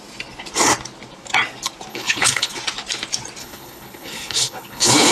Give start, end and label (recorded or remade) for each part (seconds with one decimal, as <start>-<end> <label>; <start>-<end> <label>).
0.0-1.9 recorded; 1.9-2.5 remade; 2.5-3.4 recorded; 3.4-5.1 remade